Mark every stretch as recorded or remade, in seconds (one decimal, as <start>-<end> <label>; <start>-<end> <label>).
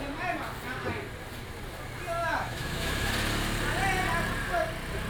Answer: 0.0-2.2 recorded; 2.2-3.1 remade; 3.1-5.1 recorded